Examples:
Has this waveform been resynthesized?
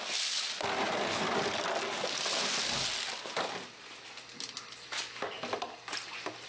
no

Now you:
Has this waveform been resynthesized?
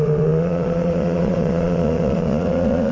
yes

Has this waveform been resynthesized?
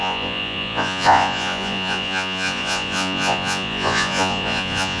yes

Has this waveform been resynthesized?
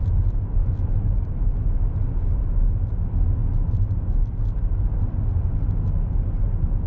no